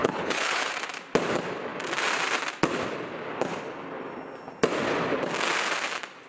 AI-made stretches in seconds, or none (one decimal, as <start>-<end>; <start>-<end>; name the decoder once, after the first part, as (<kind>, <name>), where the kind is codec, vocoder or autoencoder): 0.0-0.7 (codec, HILCodec)